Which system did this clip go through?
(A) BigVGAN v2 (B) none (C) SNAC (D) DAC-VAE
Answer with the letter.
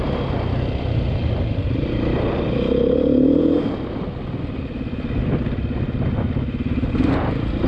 B